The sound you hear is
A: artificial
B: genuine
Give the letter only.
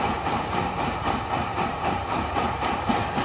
A